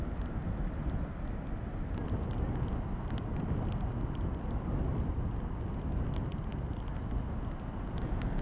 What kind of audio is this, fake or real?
real